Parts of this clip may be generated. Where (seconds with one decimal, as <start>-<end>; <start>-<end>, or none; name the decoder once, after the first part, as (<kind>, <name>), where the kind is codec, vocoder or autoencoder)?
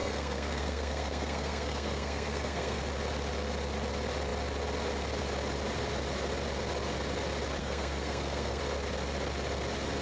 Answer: 0.0-2.8 (codec, SNAC); 7.6-8.6